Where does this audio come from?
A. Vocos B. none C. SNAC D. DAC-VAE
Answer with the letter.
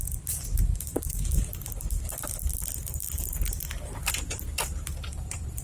B